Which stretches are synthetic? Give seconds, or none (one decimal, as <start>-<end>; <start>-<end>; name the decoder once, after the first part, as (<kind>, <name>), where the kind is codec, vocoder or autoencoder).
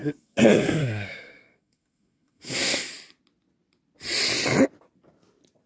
0.0-2.9 (codec, SNAC)